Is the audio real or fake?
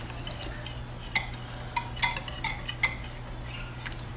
real